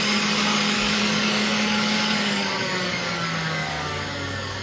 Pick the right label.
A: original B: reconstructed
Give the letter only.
B